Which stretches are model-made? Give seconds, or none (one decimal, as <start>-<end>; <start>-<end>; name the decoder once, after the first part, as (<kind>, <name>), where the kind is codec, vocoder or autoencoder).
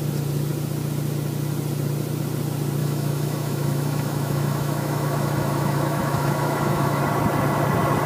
2.8-7.0 (autoencoder, DAC-VAE)